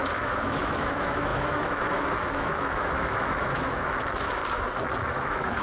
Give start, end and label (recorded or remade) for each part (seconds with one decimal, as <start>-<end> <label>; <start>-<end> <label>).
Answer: 0.0-4.4 remade; 4.4-5.1 recorded; 5.1-5.6 remade